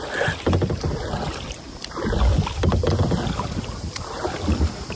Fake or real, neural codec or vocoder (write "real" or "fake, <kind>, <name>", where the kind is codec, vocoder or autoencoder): real